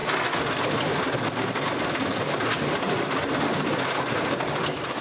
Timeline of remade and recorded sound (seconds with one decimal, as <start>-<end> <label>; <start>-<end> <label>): 0.0-5.0 recorded